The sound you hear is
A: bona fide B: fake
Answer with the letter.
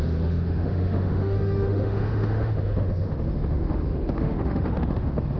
B